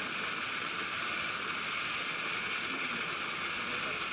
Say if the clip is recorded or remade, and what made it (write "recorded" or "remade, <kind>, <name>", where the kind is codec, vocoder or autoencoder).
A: recorded